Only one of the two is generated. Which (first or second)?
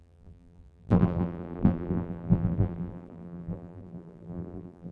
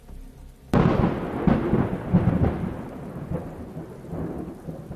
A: first